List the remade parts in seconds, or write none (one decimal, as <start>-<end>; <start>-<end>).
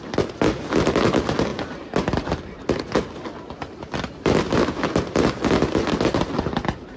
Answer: none